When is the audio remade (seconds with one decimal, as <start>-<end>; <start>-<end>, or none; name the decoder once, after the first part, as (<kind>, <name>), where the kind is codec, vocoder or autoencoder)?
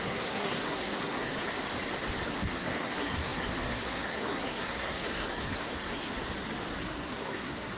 0.0-1.3 (codec, SNAC); 2.3-6.1; 6.8-7.8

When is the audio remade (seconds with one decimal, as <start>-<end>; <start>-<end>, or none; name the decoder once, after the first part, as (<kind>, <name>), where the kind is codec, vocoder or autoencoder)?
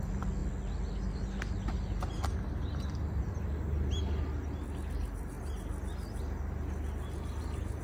none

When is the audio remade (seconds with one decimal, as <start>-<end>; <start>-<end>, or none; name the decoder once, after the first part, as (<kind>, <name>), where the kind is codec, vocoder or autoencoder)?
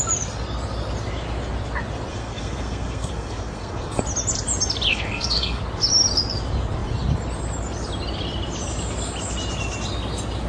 2.1-4.0 (codec, SNAC); 4.9-5.6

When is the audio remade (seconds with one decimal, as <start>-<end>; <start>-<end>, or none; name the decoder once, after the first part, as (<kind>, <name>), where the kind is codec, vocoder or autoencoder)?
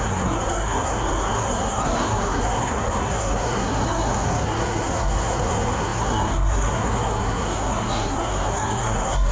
0.0-9.3 (codec, SNAC)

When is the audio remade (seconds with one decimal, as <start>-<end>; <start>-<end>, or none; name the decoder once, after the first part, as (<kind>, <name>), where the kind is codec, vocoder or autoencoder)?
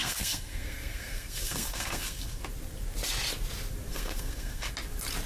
0.0-2.4 (codec, SNAC); 3.9-4.7